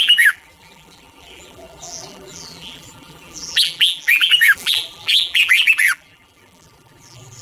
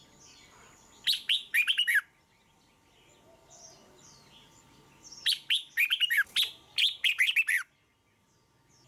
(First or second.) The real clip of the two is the second